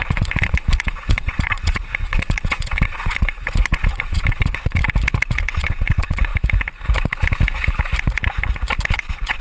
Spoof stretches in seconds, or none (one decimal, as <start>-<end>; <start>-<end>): 0.0-4.8; 5.4-6.3; 8.9-9.4